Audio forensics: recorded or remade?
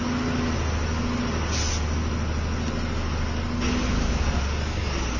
recorded